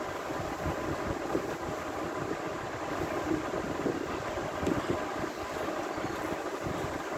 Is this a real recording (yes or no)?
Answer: yes